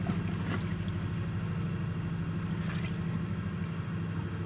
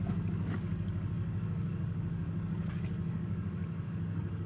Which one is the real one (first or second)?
first